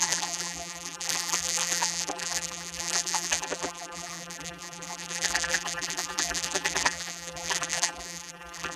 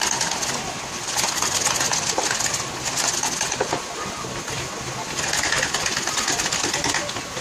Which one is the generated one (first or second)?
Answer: first